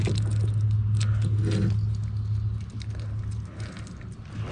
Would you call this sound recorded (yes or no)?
yes